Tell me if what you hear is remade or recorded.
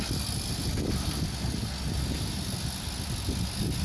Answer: recorded